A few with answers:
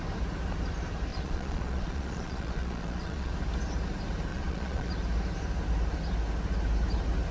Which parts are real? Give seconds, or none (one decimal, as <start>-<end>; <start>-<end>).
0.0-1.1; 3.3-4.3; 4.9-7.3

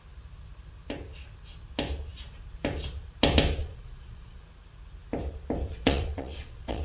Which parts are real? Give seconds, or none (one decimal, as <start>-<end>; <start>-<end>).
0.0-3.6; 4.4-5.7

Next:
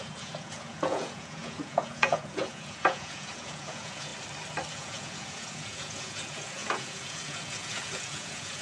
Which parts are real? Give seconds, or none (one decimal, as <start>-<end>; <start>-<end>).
4.1-4.7

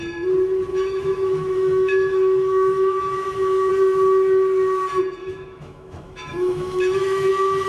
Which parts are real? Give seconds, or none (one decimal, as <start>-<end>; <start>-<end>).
0.0-0.7; 3.7-5.2; 7.3-7.7

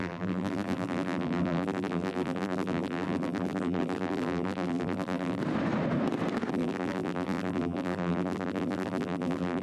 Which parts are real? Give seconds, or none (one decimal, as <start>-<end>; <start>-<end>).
5.4-6.5

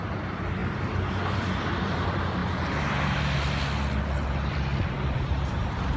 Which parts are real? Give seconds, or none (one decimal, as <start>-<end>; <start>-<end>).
0.6-1.1; 2.4-4.5

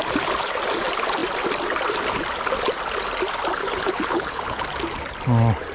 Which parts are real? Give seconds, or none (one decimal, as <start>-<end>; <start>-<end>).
0.0-3.6; 4.6-5.7

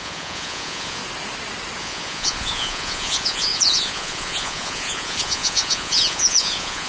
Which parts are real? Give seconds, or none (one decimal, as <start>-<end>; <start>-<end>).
1.0-1.8